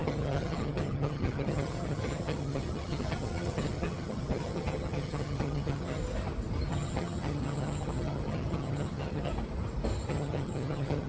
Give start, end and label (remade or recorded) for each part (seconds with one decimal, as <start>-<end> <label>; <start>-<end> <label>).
0.0-6.0 remade; 6.0-6.7 recorded; 6.7-9.3 remade; 9.3-10.1 recorded; 10.1-11.1 remade